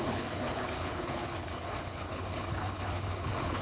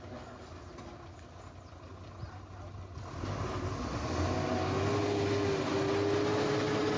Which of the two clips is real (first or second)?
second